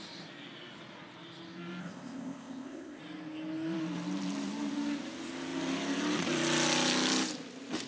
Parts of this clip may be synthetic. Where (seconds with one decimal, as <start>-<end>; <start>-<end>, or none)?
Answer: 1.8-3.0